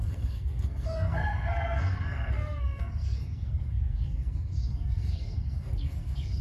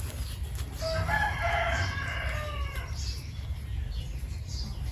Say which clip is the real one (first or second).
second